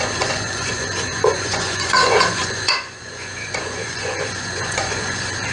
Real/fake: fake